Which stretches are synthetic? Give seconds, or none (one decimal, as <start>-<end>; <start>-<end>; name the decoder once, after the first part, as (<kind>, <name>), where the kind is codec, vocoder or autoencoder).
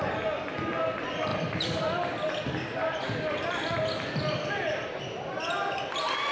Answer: 1.3-4.9 (vocoder, BigVGAN v2)